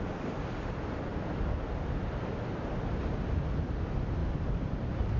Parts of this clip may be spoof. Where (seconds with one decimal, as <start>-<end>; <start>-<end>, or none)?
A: none